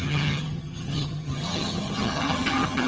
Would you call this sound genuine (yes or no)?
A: no